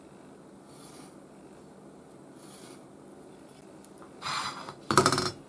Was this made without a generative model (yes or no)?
yes